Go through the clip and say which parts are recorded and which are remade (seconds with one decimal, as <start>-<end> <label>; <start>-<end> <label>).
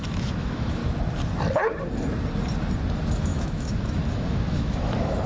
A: 0.0-0.8 remade; 0.8-2.9 recorded; 2.9-5.3 remade